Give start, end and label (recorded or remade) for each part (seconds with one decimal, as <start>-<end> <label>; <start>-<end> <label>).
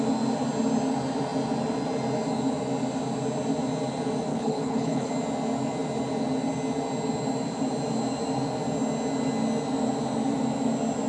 0.0-4.3 recorded; 4.3-5.1 remade; 5.1-11.1 recorded